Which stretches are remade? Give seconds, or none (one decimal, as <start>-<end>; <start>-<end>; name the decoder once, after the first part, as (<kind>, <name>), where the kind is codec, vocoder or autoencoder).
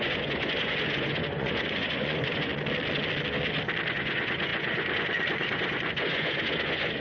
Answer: 0.0-2.5 (vocoder, Vocos); 3.9-7.0